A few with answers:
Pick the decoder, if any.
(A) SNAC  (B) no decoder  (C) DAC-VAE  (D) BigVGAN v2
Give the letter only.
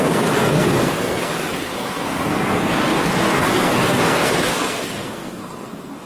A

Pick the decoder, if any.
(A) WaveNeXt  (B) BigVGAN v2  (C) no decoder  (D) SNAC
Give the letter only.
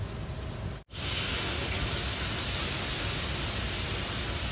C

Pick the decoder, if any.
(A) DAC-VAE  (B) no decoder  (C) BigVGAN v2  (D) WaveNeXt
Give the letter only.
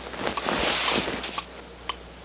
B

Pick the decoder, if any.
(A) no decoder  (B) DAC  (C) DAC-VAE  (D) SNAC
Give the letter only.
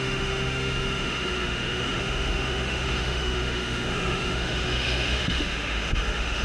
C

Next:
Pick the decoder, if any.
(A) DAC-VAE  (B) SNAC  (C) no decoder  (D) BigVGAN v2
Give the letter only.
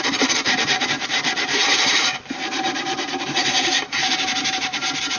D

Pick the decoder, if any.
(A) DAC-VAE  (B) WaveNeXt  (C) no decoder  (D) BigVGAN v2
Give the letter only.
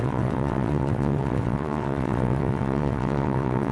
B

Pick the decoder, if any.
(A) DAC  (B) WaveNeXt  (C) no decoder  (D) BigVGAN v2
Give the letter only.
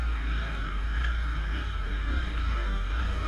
A